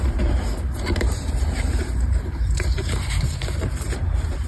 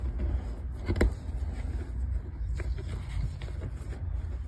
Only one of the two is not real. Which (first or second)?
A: first